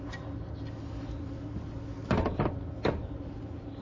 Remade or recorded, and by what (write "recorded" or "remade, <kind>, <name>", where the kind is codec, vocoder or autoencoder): recorded